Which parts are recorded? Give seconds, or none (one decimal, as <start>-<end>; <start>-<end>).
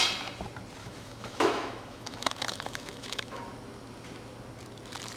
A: 0.0-0.8; 3.4-5.2